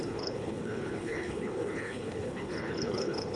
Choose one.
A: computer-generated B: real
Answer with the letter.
A